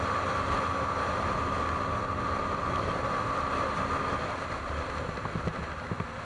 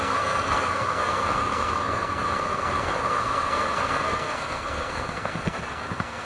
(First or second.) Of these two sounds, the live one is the first